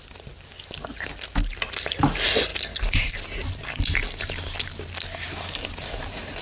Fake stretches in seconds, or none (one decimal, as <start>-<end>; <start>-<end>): none